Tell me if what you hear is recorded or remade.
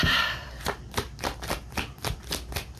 recorded